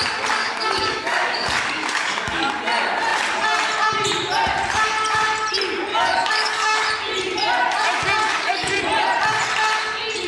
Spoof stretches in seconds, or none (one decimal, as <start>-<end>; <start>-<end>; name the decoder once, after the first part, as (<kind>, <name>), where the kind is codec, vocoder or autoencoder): 0.4-2.6 (codec, DAC); 5.9-6.8; 8.2-8.8